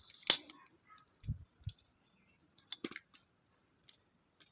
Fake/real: real